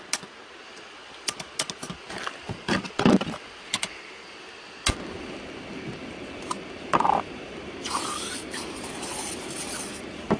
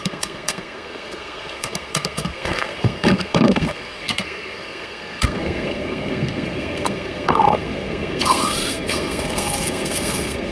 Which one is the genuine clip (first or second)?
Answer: first